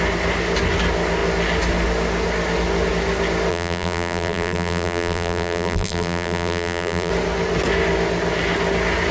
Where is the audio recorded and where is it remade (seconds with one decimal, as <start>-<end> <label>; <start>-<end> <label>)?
0.0-3.5 recorded; 3.5-7.1 remade; 7.1-9.1 recorded